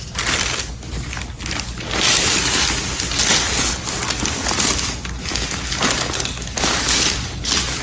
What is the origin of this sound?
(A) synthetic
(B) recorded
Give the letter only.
B